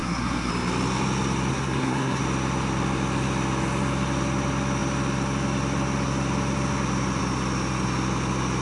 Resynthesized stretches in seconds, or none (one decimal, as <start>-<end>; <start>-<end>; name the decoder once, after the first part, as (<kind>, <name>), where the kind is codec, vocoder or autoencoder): 0.0-0.5 (codec, SNAC); 1.5-2.2